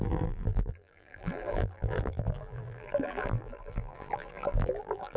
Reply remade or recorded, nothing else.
remade